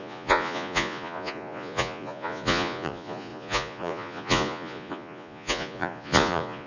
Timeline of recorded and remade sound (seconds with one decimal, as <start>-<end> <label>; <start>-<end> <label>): 0.0-6.7 remade